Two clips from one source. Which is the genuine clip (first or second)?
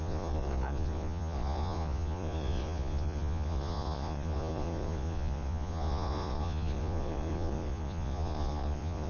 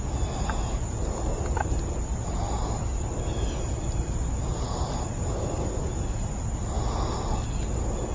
second